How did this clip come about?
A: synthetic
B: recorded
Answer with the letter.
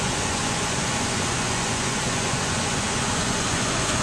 A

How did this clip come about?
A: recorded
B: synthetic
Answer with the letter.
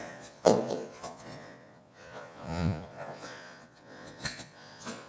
B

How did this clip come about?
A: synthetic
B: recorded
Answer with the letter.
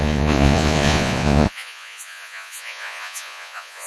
A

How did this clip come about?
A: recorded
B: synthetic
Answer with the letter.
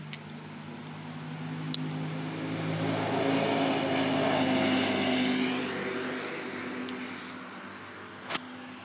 A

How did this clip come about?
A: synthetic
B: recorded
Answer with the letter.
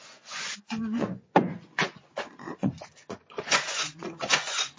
A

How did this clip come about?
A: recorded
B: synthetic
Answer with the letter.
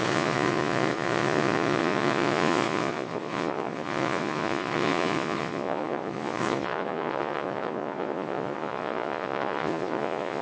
B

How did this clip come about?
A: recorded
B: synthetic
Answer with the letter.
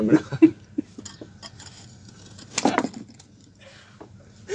A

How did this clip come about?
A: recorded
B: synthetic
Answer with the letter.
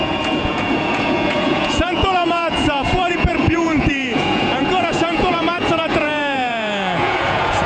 B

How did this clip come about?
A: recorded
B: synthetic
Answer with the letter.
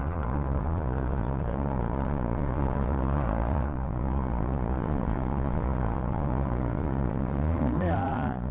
B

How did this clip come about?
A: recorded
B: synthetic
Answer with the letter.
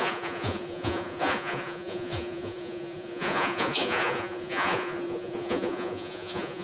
B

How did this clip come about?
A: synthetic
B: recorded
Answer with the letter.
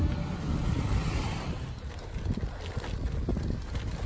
B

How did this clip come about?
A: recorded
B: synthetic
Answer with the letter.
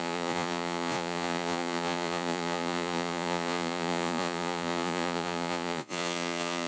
B